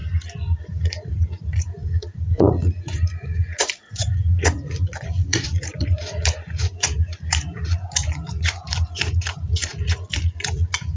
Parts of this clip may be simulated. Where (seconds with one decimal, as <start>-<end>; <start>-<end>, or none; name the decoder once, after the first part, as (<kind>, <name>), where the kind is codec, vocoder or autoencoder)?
0.6-11.0 (vocoder, Vocos)